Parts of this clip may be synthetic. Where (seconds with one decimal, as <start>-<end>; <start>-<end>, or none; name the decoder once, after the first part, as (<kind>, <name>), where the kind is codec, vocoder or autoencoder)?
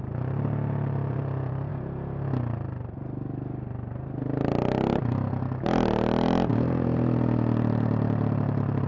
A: 0.0-1.7 (vocoder, BigVGAN v2); 6.5-8.9